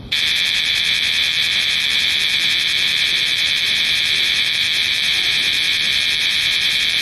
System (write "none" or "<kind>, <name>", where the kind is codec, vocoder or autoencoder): vocoder, BigVGAN v2